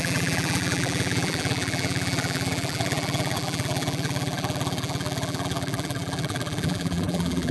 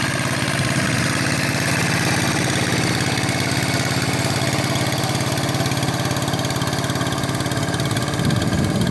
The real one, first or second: second